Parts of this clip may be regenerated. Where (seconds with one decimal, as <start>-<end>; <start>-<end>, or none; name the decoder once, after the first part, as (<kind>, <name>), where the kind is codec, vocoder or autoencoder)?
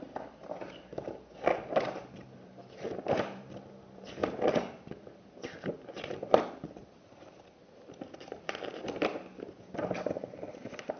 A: 0.0-4.2 (vocoder, BigVGAN v2); 5.9-11.0